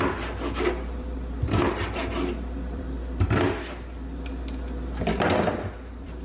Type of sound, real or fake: fake